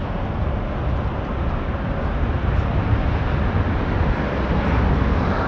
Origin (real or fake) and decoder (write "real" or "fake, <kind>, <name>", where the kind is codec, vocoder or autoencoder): real